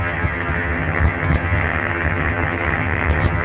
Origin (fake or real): fake